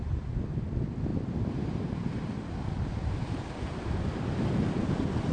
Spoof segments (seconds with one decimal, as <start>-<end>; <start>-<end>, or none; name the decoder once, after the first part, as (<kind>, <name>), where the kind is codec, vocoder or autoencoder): none